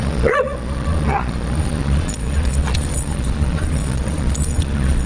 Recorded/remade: remade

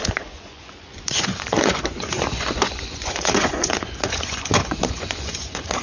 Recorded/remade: remade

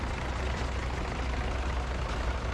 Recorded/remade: recorded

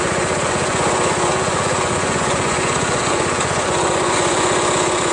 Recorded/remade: remade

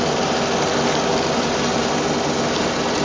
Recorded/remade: recorded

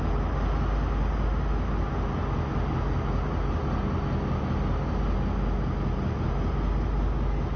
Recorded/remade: recorded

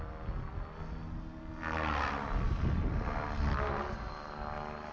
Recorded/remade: recorded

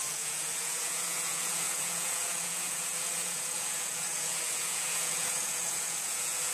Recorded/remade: remade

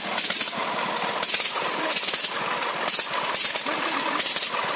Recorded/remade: recorded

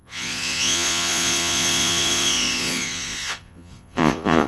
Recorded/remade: remade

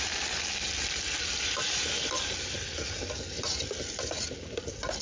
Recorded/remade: recorded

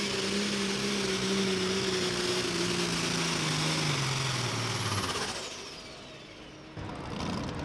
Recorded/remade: recorded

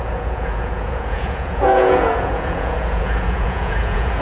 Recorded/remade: remade